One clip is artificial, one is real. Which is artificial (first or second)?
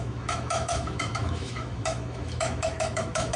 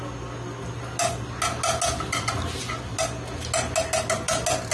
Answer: first